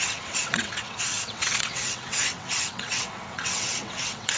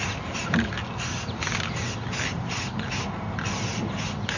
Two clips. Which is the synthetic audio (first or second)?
first